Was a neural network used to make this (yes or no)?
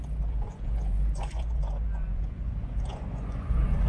yes